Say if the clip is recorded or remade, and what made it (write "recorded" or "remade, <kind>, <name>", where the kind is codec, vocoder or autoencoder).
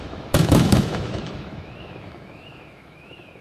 remade, autoencoder, DAC-VAE